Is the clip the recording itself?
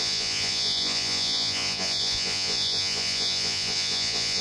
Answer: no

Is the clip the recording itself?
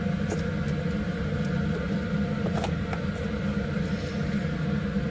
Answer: yes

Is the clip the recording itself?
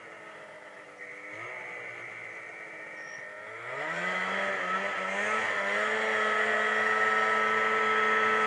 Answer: yes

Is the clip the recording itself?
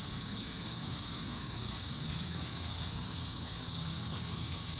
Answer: no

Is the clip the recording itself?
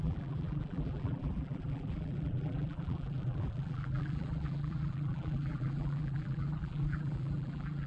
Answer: no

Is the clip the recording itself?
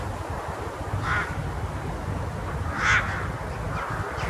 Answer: yes